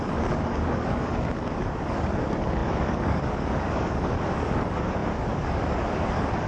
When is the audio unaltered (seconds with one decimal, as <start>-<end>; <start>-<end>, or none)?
none